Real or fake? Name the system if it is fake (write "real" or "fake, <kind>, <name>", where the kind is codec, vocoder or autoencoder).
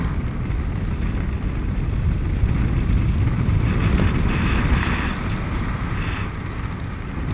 real